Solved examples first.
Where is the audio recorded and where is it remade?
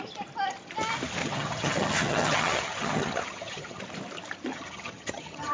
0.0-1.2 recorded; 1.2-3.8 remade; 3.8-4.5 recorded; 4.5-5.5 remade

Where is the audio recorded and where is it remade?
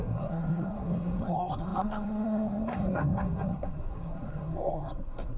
0.0-5.4 remade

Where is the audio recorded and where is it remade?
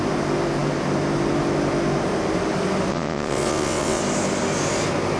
0.0-2.9 recorded; 2.9-4.0 remade; 4.0-5.2 recorded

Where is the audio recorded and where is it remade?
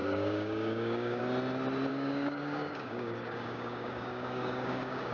0.0-1.2 remade; 1.2-1.9 recorded; 1.9-5.1 remade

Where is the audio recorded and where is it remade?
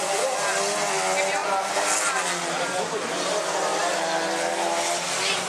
0.0-5.5 recorded